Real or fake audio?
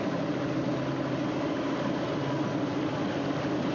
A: real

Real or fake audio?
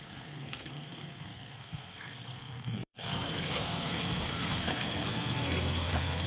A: fake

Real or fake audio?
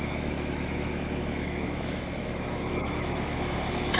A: fake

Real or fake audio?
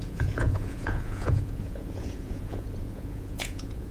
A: fake